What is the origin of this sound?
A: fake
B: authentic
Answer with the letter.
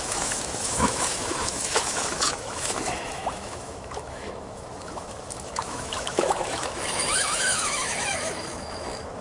A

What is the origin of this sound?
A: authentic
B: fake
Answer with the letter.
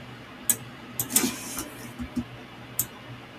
A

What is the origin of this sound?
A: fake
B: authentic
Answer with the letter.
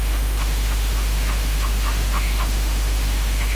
A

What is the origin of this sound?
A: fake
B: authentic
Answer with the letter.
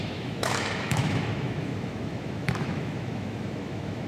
A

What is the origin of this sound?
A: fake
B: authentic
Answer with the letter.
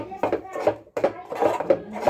B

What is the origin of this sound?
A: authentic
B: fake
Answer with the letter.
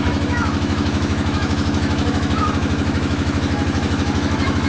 B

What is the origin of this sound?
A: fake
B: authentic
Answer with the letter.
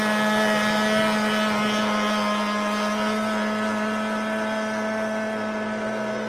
B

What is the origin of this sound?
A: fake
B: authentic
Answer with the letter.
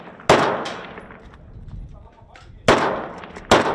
B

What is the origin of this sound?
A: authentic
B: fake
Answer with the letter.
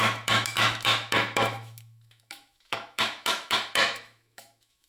B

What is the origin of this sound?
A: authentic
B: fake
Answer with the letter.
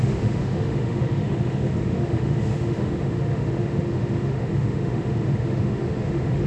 B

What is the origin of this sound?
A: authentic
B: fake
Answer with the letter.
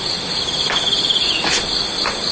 A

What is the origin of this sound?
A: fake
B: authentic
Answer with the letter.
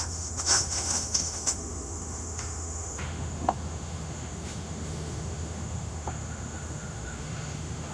A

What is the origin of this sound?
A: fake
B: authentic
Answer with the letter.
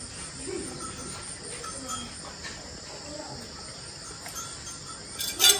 B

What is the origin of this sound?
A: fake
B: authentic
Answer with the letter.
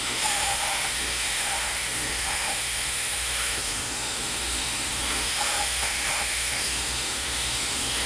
A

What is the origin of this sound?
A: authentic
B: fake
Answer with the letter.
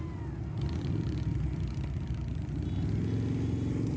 A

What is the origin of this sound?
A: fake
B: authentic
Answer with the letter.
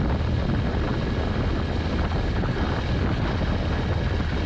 B